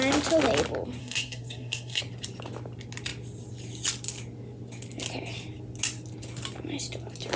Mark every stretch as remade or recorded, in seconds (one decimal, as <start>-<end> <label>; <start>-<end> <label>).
0.0-1.0 recorded; 1.0-2.0 remade; 2.0-7.4 recorded